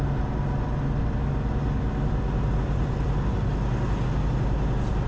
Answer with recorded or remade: recorded